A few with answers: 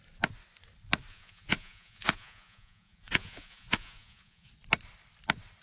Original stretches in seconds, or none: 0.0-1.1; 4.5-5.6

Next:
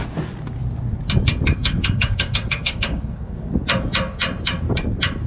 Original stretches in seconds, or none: 0.0-1.6; 3.5-5.3

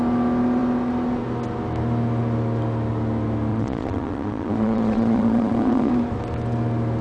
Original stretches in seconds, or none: 0.0-3.5; 5.9-7.0

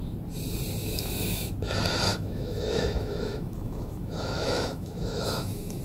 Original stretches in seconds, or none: 0.0-0.8; 1.5-2.1

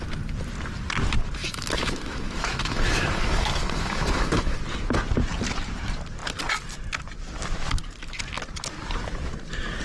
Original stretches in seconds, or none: 0.0-1.4; 4.6-9.8

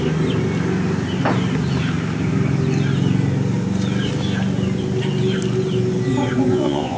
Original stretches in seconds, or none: 0.0-6.5

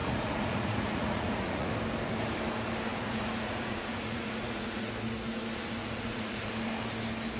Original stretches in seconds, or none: 1.7-2.9; 4.9-5.8; 6.5-7.4

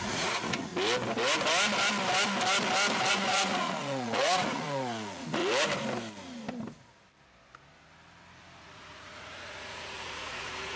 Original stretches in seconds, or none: 0.7-3.1; 5.4-8.6